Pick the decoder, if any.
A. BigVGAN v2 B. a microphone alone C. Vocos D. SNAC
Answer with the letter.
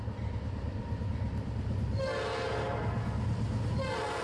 B